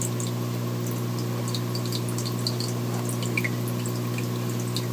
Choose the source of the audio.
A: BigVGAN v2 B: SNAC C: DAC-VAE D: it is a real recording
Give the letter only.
D